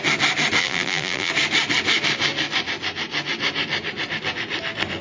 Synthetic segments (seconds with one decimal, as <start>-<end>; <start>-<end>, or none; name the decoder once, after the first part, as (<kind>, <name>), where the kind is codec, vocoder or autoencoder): 0.6-1.3 (vocoder, BigVGAN v2)

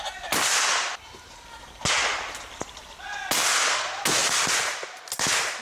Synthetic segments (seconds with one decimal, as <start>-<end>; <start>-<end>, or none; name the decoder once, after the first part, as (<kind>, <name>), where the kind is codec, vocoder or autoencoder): 4.2-5.0 (vocoder, BigVGAN v2)

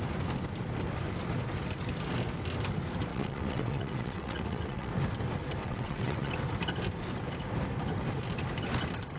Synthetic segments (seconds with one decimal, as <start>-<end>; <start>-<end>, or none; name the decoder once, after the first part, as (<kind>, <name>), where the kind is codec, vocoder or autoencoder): 3.1-4.9 (vocoder, WaveNeXt); 5.6-6.3

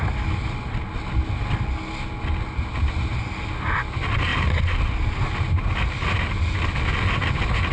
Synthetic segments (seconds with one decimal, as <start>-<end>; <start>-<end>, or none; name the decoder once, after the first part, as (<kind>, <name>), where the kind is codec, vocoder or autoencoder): none

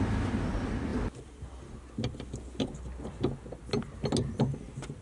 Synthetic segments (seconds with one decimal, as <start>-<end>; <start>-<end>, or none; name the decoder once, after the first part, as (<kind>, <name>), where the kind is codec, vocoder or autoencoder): none

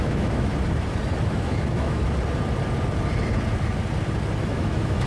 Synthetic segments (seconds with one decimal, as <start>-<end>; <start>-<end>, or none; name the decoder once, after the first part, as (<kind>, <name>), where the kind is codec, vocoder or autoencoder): 0.0-0.5 (autoencoder, DAC-VAE); 1.3-2.0; 4.4-5.1

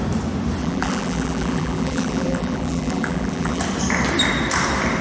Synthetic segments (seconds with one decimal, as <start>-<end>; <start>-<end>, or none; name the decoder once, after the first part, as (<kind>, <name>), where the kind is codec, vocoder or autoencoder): 0.6-3.6 (vocoder, BigVGAN v2)